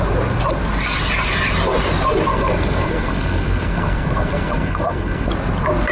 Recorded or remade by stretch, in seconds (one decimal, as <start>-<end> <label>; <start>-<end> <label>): 0.0-2.3 recorded; 2.3-5.3 remade; 5.3-5.9 recorded